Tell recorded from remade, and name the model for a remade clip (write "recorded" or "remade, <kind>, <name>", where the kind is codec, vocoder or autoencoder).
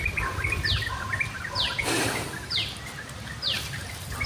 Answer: recorded